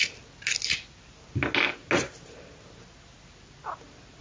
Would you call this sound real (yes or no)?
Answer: yes